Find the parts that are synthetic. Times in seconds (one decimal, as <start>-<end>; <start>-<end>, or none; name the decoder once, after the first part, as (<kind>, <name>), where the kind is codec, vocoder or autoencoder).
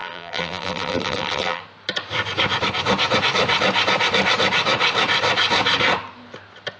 0.0-1.6 (vocoder, BigVGAN v2)